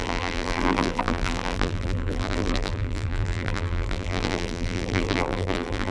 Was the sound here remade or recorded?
remade